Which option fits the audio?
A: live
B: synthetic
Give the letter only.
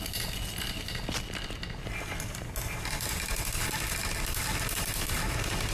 A